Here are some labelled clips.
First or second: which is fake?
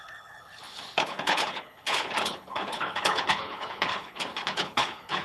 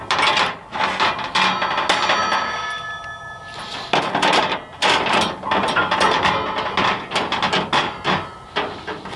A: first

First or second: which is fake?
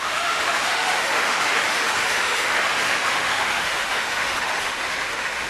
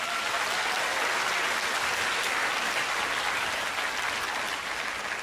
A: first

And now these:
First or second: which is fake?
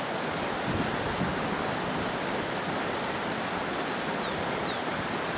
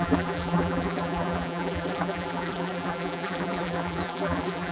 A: second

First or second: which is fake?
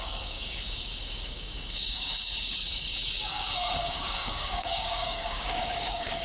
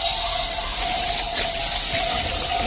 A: first